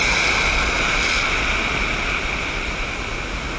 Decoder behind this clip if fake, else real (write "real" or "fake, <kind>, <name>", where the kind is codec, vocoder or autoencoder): real